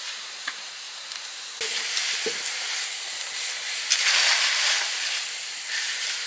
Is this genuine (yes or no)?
yes